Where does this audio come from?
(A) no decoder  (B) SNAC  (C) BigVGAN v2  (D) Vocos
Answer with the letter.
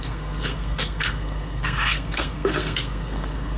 B